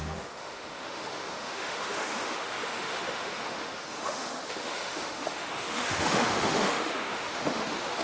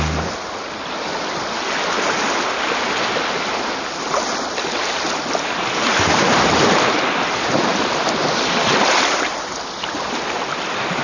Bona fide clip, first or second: second